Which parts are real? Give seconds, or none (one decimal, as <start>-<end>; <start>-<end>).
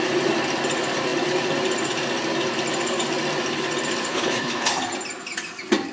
0.0-4.1; 4.8-5.9